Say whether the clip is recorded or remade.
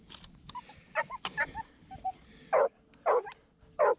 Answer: recorded